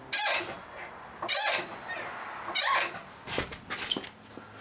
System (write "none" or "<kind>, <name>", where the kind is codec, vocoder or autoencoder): none